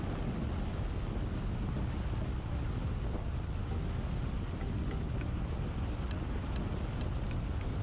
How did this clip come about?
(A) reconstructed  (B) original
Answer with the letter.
B